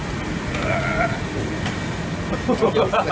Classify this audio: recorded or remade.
recorded